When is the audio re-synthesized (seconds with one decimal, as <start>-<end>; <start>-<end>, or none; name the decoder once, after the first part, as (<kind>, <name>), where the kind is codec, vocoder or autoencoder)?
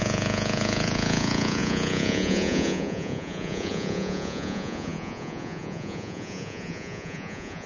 0.0-7.7 (vocoder, Vocos)